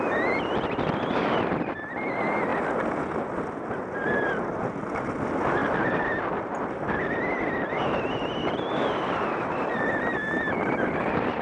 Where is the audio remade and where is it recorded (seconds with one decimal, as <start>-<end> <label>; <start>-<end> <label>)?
0.0-11.4 recorded